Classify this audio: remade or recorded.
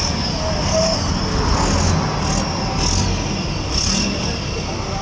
recorded